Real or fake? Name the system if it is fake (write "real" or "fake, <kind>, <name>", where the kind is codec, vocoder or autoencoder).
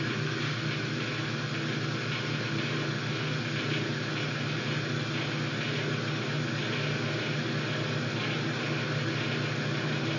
real